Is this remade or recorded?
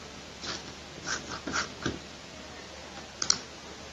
recorded